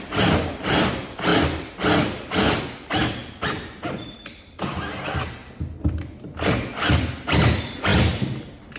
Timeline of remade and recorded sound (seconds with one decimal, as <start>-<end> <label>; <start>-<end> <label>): 0.0-5.4 remade; 5.4-6.7 recorded; 6.7-8.8 remade